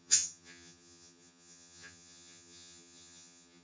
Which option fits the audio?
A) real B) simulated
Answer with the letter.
B